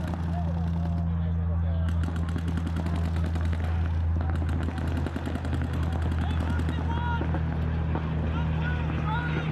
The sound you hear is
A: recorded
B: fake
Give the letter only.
A